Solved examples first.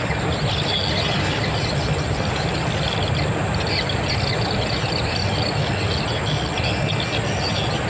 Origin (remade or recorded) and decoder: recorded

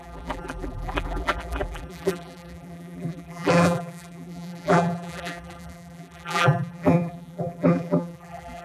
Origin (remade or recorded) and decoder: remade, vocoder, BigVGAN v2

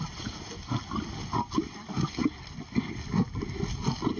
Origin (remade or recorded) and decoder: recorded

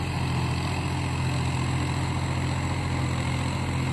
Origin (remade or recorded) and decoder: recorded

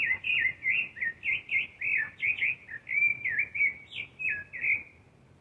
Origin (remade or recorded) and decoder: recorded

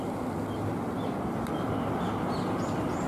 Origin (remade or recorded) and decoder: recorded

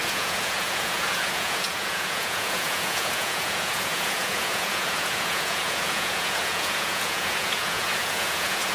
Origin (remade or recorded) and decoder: remade, vocoder, Vocos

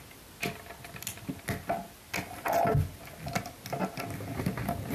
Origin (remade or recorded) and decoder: recorded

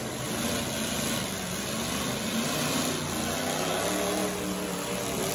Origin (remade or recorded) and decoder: recorded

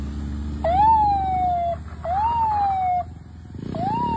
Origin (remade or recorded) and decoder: recorded